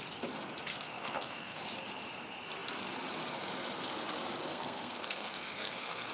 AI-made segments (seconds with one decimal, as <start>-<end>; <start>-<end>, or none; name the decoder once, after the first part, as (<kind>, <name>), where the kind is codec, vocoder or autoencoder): 0.7-1.6 (codec, SNAC); 4.5-6.1

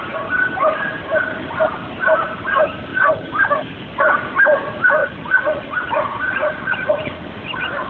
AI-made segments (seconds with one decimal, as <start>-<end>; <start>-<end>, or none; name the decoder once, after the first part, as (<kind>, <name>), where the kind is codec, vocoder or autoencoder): 5.0-7.2 (vocoder, Vocos)

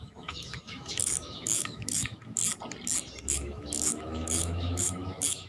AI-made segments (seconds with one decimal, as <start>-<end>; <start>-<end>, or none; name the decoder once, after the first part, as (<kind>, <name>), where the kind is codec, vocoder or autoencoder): 0.0-2.4 (autoencoder, DAC-VAE); 3.2-5.5

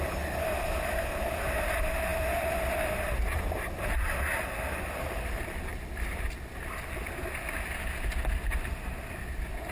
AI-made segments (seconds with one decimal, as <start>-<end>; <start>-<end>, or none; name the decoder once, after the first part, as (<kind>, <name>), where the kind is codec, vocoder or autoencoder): none

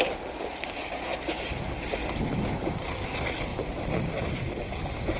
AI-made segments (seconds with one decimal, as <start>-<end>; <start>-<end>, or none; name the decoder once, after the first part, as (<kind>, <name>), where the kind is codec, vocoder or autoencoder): none